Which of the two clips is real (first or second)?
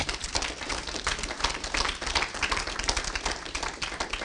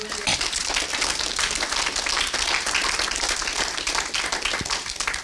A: second